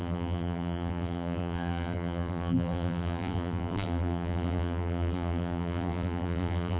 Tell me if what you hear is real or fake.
fake